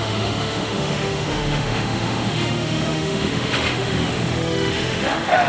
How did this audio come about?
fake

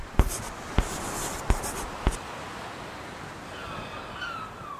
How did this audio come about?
real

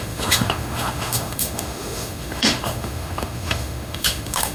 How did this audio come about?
fake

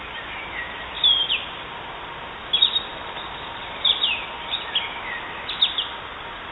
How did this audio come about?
real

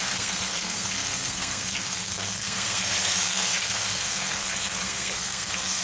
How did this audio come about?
fake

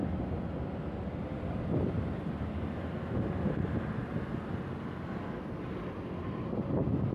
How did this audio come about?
real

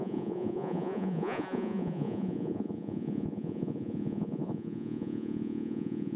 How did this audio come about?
fake